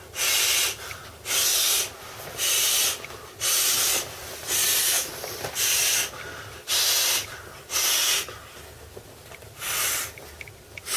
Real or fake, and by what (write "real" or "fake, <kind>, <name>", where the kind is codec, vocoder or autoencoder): real